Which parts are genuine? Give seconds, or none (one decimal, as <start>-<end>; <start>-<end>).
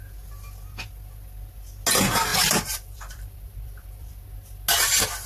0.0-2.3; 4.1-5.3